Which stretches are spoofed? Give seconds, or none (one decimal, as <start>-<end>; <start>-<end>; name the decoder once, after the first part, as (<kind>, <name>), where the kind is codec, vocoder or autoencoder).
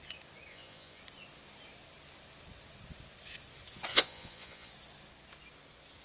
0.5-1.0 (vocoder, Vocos); 3.9-4.7